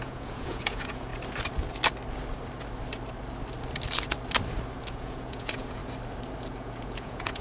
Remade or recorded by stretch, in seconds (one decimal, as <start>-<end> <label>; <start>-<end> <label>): 0.0-1.1 remade; 1.1-4.9 recorded; 4.9-5.8 remade; 5.8-6.5 recorded; 6.5-7.4 remade